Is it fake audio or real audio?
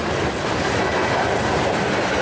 real